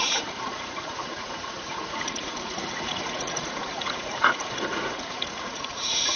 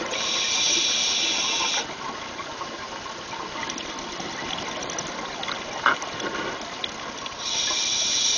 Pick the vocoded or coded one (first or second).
first